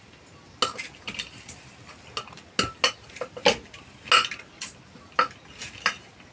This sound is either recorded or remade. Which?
recorded